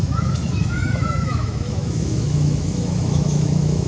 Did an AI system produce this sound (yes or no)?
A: yes